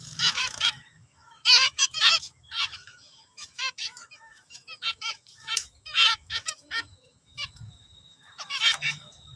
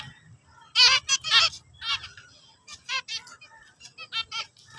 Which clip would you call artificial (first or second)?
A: first